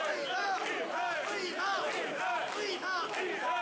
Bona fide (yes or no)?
yes